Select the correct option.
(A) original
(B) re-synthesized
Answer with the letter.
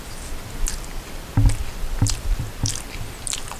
B